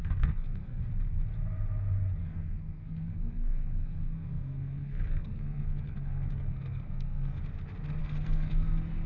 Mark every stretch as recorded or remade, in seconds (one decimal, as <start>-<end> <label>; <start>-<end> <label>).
0.0-0.8 remade; 0.8-2.2 recorded; 2.2-7.4 remade; 7.4-8.0 recorded; 8.0-8.7 remade; 8.7-9.1 recorded